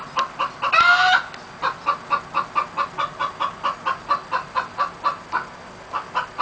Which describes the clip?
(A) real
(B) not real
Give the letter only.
A